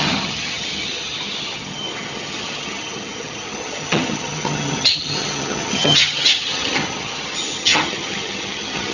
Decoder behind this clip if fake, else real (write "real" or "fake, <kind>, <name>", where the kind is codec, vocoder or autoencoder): fake, vocoder, HiFi-GAN